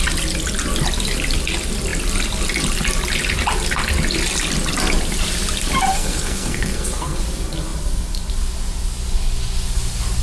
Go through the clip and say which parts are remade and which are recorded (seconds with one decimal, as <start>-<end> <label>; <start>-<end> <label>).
0.0-5.9 recorded; 5.9-7.2 remade; 7.2-10.2 recorded